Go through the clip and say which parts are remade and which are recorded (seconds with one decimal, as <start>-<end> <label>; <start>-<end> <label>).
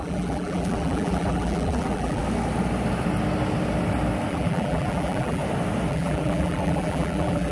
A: 0.0-2.2 remade; 2.2-4.3 recorded; 4.3-5.4 remade; 5.4-5.9 recorded; 5.9-7.5 remade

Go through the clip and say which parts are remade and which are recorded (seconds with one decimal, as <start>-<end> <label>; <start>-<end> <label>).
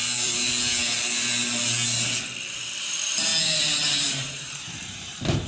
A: 0.0-0.5 remade; 0.5-2.8 recorded; 2.8-3.3 remade; 3.3-4.1 recorded; 4.1-5.5 remade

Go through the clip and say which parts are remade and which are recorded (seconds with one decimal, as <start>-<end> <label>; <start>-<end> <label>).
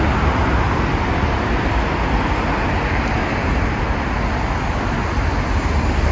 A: 0.0-3.2 recorded; 3.2-3.8 remade; 3.8-6.1 recorded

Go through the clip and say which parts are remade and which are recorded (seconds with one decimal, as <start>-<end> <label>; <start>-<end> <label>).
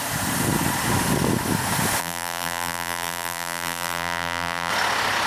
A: 0.0-2.0 recorded; 2.0-4.7 remade; 4.7-5.3 recorded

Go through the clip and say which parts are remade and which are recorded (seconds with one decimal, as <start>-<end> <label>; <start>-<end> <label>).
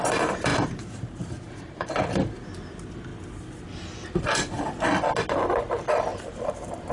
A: 0.0-0.5 recorded; 0.5-1.9 remade; 1.9-6.1 recorded; 6.1-6.9 remade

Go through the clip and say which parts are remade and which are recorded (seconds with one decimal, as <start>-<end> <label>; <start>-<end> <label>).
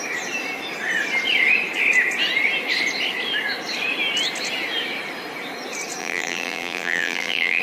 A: 0.0-6.0 recorded; 6.0-7.6 remade